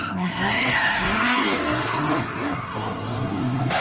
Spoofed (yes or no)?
yes